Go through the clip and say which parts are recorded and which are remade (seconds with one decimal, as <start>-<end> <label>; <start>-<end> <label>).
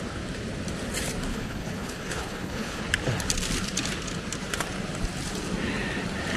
0.0-1.3 recorded; 1.3-2.8 remade; 2.8-6.4 recorded